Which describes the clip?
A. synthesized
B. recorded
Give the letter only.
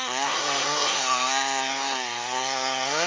A